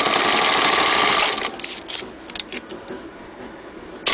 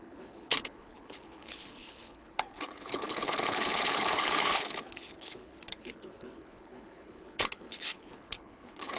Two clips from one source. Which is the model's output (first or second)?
second